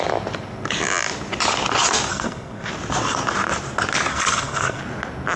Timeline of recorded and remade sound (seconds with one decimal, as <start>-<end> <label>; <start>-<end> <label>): 0.0-2.1 recorded; 2.1-2.7 remade; 2.7-4.1 recorded; 4.1-4.8 remade; 4.8-5.4 recorded